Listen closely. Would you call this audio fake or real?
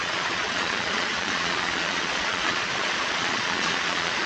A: fake